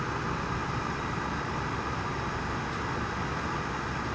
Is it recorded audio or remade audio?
recorded